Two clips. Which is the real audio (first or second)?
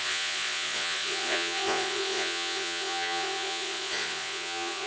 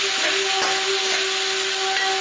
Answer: second